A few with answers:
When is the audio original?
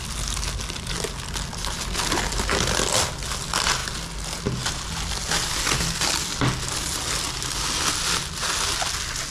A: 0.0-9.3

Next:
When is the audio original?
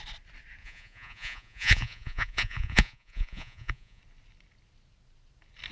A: 0.0-0.6; 4.0-5.7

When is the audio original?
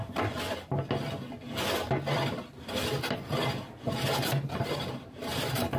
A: 0.0-4.3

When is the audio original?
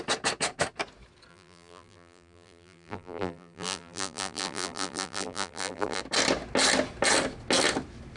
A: 0.0-1.3; 6.0-8.2